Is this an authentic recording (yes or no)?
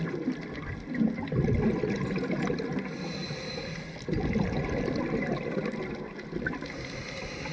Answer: yes